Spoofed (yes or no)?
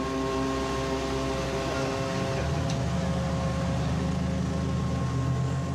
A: no